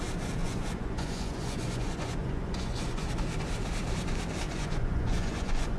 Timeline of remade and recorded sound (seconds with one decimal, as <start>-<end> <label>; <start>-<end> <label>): 0.0-0.4 recorded; 0.4-3.1 remade; 3.1-4.5 recorded; 4.5-5.8 remade